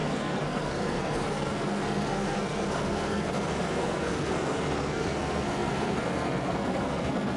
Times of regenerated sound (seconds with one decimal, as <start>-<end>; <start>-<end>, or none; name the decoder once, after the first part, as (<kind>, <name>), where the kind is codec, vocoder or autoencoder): 0.0-7.4 (codec, SNAC)

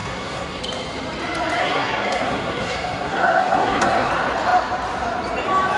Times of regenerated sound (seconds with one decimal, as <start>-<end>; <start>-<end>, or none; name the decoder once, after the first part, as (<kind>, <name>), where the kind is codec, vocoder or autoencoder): 0.0-0.6 (codec, SNAC); 1.6-4.1

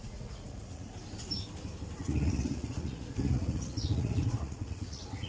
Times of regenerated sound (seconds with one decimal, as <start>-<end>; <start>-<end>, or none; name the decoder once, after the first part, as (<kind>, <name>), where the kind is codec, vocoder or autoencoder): 0.0-0.9 (vocoder, Vocos); 2.0-5.3

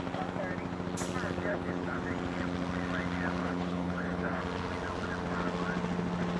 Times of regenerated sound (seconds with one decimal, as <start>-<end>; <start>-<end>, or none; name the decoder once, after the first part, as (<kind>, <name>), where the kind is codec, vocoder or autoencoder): 1.5-2.0 (codec, HILCodec); 3.4-4.4

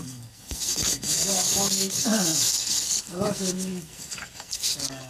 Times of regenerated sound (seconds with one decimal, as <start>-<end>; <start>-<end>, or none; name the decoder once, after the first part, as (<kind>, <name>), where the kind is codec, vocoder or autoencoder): 0.0-5.1 (codec, SNAC)

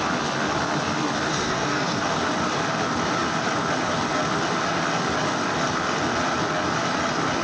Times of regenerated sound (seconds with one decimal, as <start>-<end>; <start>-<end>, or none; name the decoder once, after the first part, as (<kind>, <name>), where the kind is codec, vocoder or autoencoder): 1.3-2.0 (codec, SNAC)

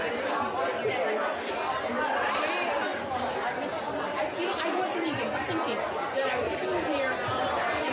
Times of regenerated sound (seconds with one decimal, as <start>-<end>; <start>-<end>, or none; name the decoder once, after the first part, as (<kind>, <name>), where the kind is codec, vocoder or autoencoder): none